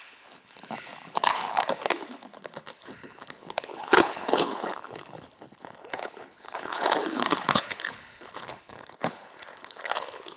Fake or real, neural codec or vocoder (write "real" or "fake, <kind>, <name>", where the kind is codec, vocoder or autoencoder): fake, codec, HILCodec